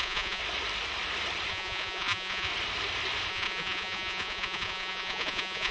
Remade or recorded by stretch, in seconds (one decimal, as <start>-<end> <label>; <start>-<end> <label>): 0.0-0.4 remade; 0.4-1.5 recorded; 1.5-2.5 remade; 2.5-3.3 recorded; 3.3-5.7 remade